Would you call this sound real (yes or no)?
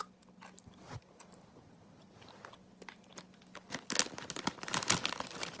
yes